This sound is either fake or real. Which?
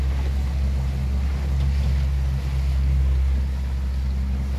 real